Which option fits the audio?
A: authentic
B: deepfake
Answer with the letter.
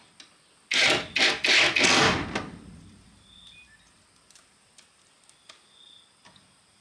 A